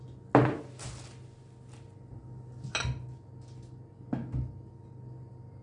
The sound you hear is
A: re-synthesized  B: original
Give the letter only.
B